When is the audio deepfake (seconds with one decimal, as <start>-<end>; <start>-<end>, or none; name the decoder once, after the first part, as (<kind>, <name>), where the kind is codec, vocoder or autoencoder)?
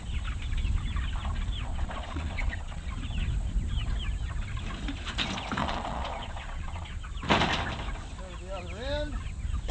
1.7-2.9 (vocoder, Vocos); 5.6-7.0